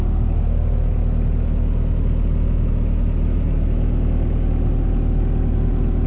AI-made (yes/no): no